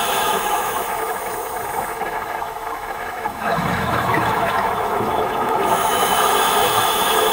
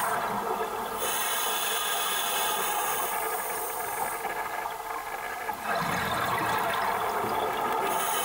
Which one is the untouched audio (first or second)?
second